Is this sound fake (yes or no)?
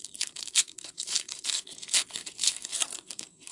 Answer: yes